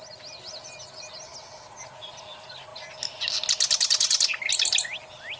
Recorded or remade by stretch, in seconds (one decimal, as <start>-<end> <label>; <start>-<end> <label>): 0.0-5.4 recorded

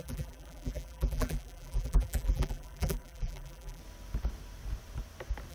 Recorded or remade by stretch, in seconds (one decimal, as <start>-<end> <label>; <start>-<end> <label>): 0.0-3.8 remade; 3.8-5.5 recorded